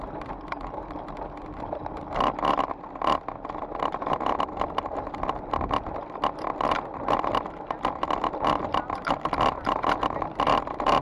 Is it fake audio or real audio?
real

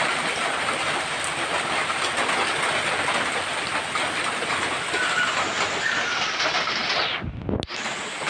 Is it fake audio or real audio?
real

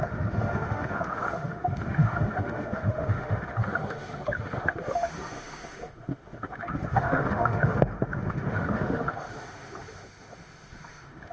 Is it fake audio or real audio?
fake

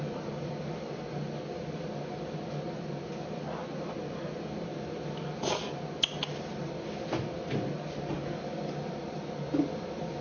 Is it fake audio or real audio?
real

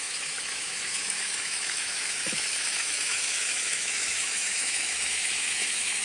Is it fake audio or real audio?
fake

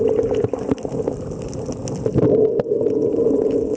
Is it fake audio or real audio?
real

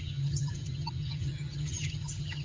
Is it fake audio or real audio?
fake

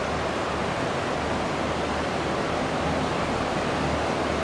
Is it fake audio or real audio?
real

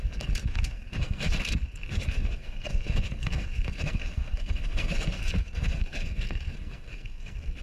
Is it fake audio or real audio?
fake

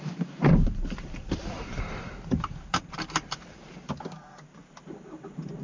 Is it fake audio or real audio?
fake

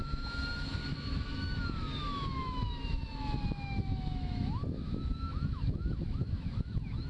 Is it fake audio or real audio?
fake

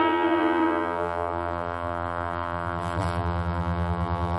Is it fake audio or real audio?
fake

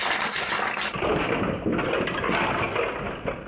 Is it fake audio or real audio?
real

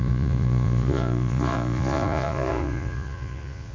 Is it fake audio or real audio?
fake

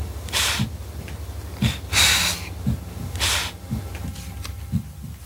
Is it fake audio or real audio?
real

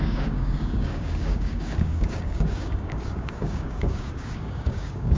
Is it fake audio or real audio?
fake